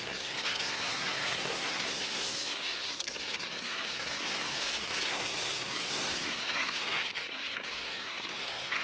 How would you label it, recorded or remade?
remade